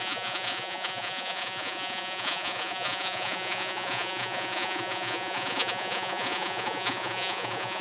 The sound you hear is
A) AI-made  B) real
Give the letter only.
A